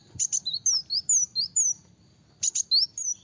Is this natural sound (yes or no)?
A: yes